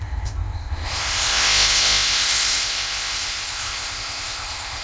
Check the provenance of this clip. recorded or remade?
remade